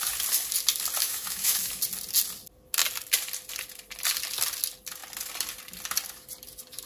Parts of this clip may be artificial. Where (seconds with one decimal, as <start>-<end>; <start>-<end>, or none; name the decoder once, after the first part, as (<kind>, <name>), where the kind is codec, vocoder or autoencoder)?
1.0-1.8 (autoencoder, DAC-VAE)

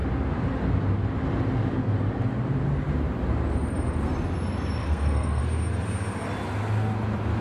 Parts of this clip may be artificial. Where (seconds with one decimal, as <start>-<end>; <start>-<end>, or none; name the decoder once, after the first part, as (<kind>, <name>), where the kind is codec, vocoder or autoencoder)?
4.8-5.4 (codec, SNAC)

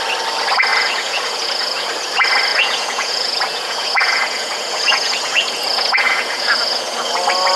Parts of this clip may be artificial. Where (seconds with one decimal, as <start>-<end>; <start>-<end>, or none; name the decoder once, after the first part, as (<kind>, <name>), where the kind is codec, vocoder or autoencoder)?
0.7-1.9 (vocoder, Vocos); 2.5-7.1

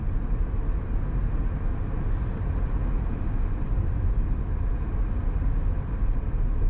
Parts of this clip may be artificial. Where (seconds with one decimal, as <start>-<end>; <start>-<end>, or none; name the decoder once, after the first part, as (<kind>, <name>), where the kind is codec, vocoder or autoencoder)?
none

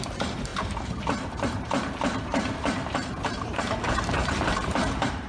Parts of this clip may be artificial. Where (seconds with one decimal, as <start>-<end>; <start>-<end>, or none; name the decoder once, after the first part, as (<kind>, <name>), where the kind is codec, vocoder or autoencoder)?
0.0-5.3 (vocoder, BigVGAN v2)